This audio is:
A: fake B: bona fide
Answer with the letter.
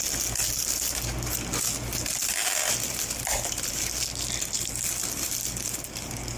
B